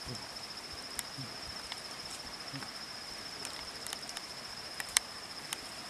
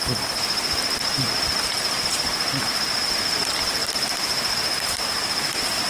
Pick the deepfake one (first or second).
first